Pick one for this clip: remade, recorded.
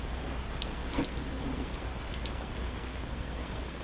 remade